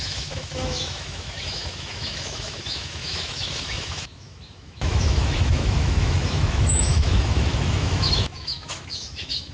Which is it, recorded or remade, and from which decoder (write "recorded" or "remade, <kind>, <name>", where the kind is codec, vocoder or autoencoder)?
remade, autoencoder, DAC-VAE